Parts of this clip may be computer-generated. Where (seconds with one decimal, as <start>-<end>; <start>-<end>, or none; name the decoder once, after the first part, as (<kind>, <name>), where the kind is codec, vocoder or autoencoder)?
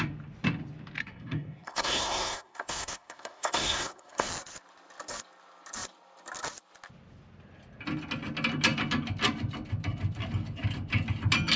1.0-4.3 (codec, SNAC)